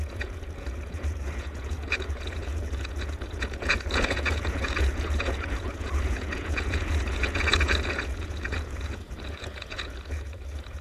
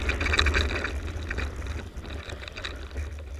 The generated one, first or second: first